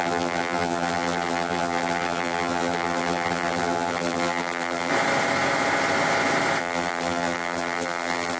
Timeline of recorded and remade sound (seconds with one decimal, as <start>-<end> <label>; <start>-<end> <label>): 0.0-4.9 remade; 4.9-6.6 recorded; 6.6-8.4 remade